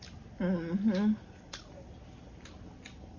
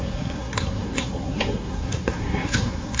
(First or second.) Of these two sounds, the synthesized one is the second